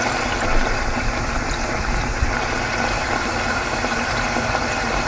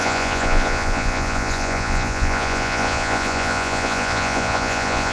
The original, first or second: first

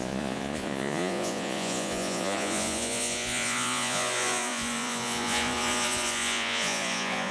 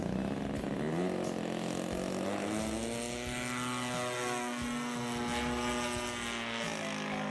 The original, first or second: second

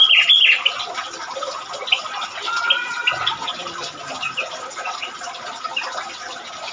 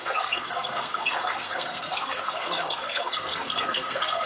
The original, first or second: first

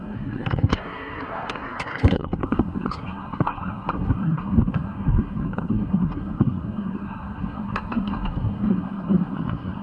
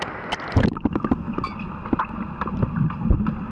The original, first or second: second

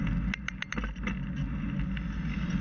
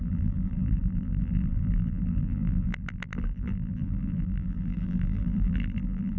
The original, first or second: first